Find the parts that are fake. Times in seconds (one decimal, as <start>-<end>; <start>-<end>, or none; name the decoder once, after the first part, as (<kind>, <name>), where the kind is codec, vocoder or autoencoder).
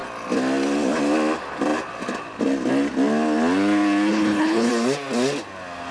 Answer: 4.1-4.7 (codec, HILCodec)